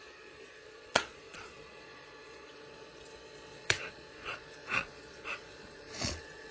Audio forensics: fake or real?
fake